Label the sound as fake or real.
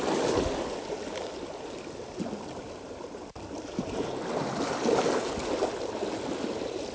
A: real